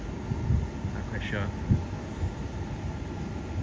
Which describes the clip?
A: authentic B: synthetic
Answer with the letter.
A